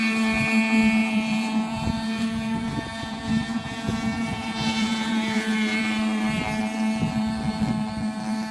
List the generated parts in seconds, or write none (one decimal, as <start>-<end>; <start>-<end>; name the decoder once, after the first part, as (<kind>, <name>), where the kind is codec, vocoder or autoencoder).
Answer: 1.0-5.8 (vocoder, Vocos)